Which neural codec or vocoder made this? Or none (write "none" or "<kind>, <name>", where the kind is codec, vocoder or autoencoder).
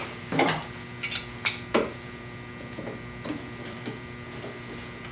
none